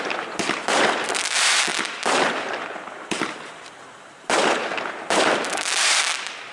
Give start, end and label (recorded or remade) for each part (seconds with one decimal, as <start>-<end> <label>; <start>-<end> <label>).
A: 0.0-1.7 remade; 1.7-5.6 recorded; 5.6-6.5 remade